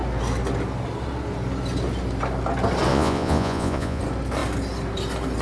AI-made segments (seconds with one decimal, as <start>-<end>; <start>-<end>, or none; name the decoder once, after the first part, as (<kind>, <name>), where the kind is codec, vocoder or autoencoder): 2.9-4.0 (vocoder, Vocos)